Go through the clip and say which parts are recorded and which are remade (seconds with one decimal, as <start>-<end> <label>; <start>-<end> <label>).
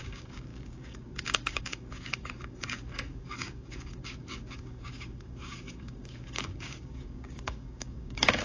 0.0-8.4 remade